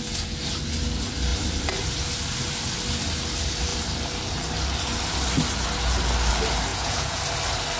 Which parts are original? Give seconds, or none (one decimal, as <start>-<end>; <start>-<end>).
0.0-6.7; 7.2-7.8